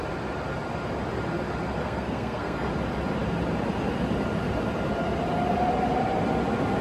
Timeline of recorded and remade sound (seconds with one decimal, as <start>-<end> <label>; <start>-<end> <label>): 0.0-1.8 recorded; 1.8-2.7 remade; 2.7-6.8 recorded